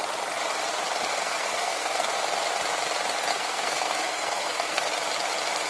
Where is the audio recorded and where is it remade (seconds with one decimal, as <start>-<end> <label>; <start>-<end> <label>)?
0.0-1.1 recorded; 1.1-2.1 remade; 2.1-3.3 recorded; 3.3-4.9 remade; 4.9-5.7 recorded